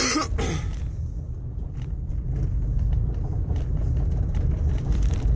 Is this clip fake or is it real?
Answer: real